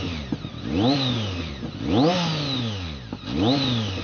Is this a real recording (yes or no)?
yes